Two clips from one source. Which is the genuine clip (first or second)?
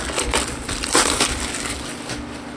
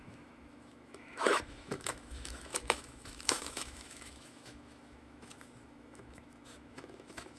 first